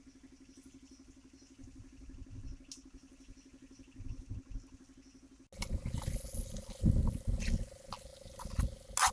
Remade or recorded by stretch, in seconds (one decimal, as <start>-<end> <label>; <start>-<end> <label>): 0.0-9.1 recorded